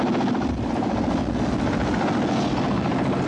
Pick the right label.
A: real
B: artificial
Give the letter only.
A